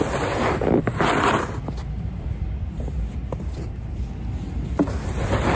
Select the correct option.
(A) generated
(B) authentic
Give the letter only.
B